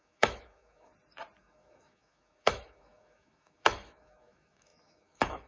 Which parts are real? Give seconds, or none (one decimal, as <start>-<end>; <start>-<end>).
0.9-1.4